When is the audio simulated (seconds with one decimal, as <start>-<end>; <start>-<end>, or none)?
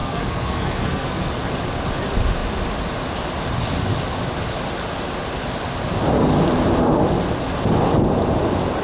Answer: 0.0-1.4